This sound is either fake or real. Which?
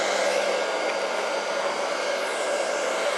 real